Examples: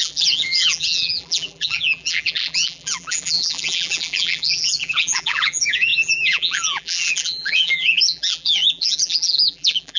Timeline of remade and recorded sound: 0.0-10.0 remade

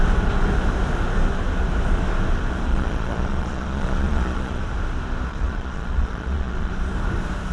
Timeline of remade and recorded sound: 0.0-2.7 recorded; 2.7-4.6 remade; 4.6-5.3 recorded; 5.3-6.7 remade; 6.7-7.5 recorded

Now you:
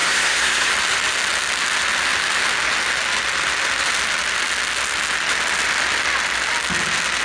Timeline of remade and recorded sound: 0.0-0.7 remade; 0.7-7.2 recorded

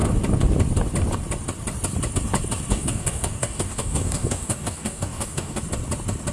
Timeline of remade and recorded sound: 0.0-2.7 recorded; 2.7-5.6 remade; 5.6-6.3 recorded

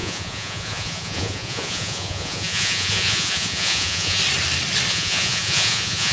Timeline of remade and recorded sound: 0.0-4.2 remade; 4.2-4.9 recorded; 4.9-6.1 remade